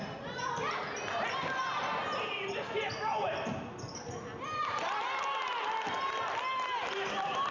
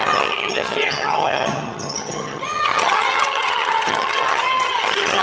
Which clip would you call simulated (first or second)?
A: second